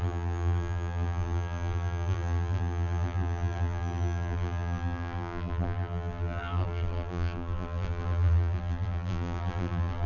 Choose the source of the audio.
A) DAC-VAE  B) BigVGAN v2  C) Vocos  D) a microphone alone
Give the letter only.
B